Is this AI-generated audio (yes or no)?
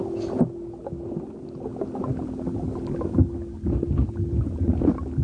no